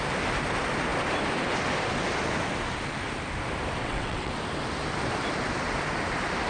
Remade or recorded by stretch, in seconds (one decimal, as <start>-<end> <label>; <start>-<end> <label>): 0.0-3.8 recorded; 3.8-4.3 remade; 4.3-6.5 recorded